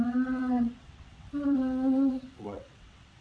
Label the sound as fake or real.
fake